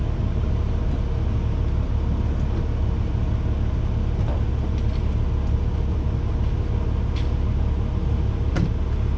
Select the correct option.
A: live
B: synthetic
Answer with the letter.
A